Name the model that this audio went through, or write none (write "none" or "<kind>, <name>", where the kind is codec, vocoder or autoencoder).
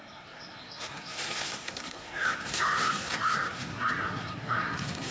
codec, SNAC